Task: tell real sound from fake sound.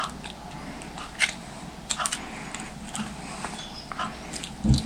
real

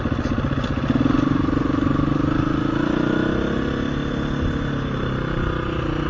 real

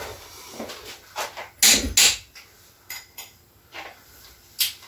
real